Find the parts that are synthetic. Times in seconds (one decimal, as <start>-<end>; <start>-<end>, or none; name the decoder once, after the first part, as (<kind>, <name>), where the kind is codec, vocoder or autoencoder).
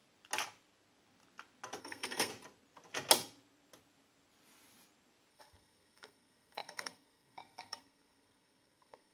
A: 1.8-2.3 (codec, SNAC); 5.3-9.1